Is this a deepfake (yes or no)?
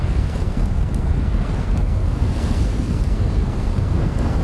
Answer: yes